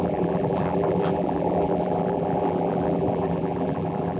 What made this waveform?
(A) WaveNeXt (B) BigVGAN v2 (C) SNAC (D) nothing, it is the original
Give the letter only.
B